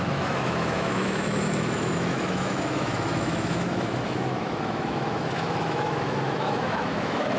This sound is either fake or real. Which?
fake